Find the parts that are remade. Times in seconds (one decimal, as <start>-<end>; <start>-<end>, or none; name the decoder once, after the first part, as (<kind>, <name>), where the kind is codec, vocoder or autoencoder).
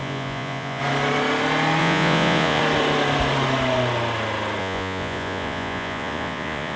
0.0-0.8 (vocoder, Vocos); 1.8-2.6; 4.6-6.8